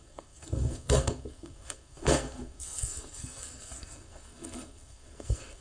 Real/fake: fake